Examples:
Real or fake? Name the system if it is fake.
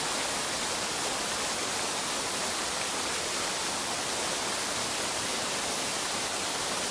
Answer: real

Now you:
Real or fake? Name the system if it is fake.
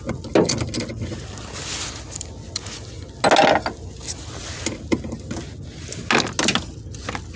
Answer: real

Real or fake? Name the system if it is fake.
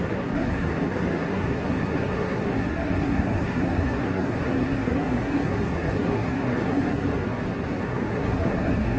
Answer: fake, codec, SNAC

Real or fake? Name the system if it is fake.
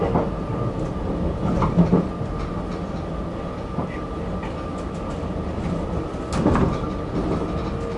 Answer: real